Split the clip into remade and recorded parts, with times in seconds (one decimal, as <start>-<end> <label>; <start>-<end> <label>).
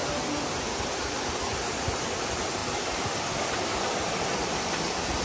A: 0.0-2.6 recorded; 2.6-5.2 remade